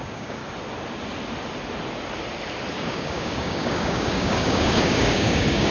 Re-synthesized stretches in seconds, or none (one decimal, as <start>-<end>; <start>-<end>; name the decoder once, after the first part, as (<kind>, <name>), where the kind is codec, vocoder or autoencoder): 0.0-0.4 (codec, DAC); 2.7-5.7